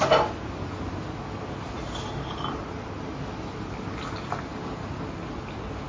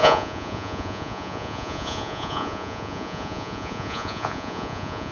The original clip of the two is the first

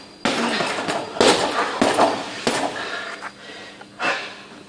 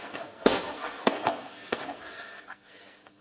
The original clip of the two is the first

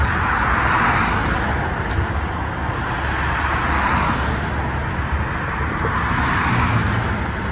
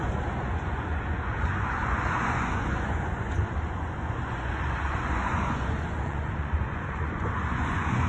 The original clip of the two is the first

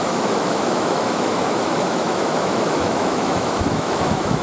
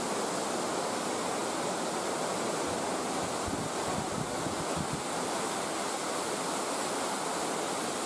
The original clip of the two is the second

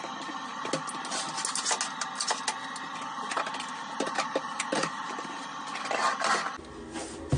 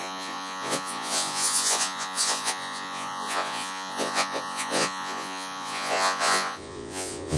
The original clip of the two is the first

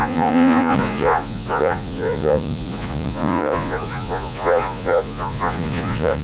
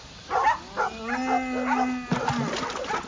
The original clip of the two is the second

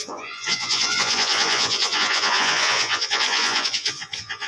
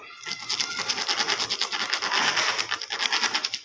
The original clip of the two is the second